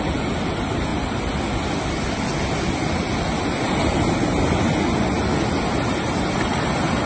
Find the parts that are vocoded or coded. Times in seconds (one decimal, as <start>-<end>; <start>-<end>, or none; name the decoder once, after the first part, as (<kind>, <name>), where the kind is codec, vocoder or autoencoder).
none